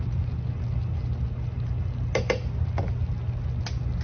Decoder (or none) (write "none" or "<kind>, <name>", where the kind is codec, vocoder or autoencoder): none